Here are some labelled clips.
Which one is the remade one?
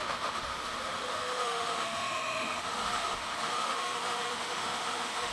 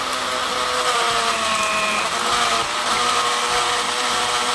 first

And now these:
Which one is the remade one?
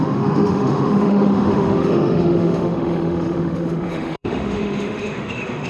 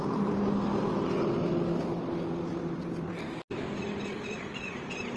first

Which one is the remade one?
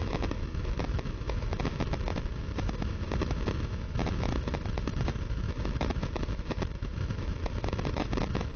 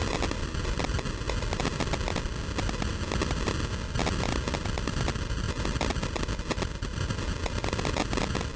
first